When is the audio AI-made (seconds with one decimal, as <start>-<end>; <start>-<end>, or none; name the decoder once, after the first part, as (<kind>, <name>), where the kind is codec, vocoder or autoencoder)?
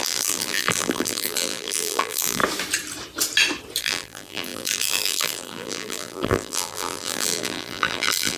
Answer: 0.0-2.4 (vocoder, BigVGAN v2); 3.8-8.4